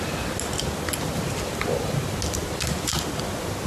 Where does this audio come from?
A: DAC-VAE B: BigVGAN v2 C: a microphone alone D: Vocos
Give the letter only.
C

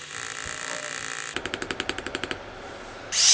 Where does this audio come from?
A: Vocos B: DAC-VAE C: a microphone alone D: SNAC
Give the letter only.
C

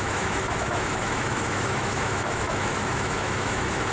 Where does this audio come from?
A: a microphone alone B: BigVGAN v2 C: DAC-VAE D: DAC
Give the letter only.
C